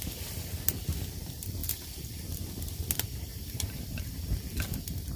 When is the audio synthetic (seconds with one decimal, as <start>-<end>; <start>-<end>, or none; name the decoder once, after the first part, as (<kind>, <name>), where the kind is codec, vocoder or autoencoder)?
3.3-3.8 (vocoder, BigVGAN v2)